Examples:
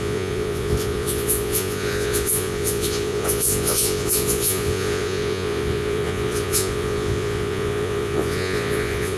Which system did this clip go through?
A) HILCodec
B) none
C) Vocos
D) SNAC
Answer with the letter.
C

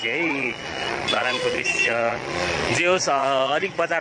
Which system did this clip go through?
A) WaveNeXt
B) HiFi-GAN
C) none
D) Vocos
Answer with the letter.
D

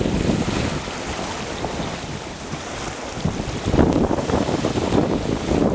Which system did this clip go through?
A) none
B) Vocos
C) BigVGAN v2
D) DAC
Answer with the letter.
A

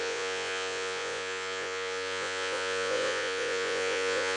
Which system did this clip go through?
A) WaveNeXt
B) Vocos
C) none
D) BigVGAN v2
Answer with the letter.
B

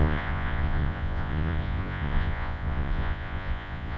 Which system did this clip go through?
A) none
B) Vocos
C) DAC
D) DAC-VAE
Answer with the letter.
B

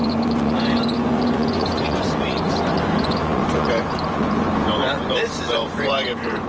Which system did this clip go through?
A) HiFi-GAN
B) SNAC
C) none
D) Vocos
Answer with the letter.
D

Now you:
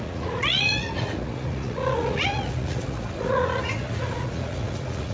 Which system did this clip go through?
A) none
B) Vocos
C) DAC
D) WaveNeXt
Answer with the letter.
B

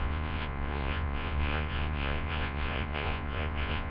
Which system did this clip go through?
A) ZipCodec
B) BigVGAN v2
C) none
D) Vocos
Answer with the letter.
D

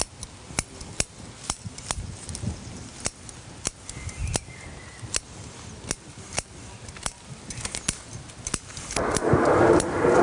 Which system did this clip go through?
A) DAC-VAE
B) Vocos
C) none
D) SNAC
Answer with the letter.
C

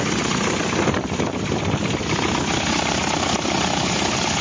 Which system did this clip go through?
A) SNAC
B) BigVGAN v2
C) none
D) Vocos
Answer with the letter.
C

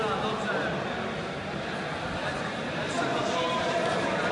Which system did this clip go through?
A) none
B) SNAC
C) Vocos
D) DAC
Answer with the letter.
A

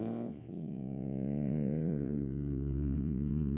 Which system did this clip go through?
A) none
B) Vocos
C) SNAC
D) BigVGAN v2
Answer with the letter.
B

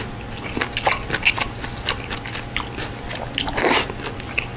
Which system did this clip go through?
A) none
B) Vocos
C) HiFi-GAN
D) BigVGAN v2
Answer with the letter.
A